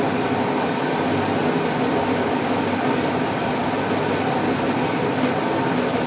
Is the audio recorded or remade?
recorded